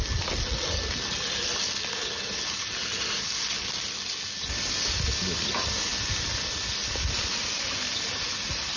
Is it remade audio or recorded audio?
recorded